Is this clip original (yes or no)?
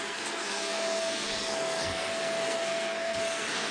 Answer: no